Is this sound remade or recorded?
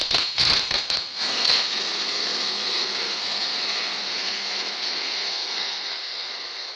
remade